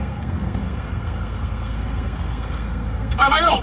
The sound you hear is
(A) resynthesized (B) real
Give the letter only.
A